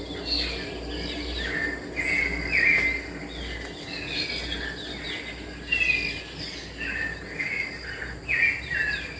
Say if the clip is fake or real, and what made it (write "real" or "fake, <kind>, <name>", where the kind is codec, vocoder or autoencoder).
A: real